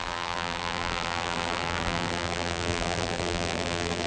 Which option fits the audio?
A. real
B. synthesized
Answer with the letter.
B